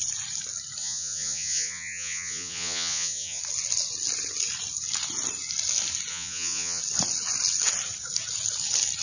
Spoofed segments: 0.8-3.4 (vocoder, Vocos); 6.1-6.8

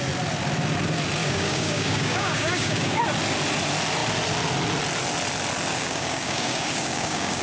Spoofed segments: 1.2-3.0 (codec, DAC); 5.7-7.4

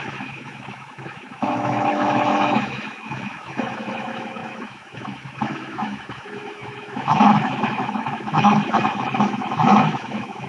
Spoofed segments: 0.0-10.5 (autoencoder, DAC-VAE)

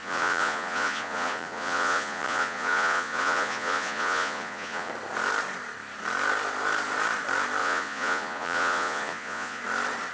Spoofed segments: 0.0-4.9 (vocoder, Vocos); 7.6-9.6

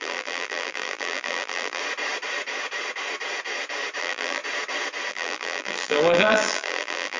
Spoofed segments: 0.0-1.8 (vocoder, BigVGAN v2); 4.0-4.4; 5.1-7.2

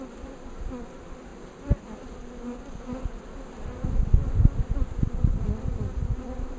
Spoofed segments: none

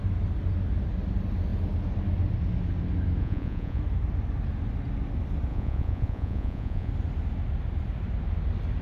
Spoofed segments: 3.2-3.8 (vocoder, Vocos); 5.5-6.9